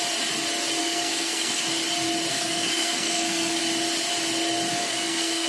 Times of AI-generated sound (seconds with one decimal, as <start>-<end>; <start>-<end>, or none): 0.8-1.6; 2.3-3.6; 4.7-5.5